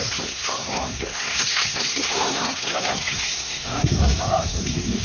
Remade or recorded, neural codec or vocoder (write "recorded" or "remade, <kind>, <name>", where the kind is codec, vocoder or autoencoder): remade, codec, SNAC